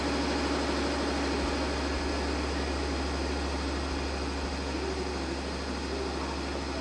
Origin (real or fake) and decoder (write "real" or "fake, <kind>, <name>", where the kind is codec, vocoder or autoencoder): real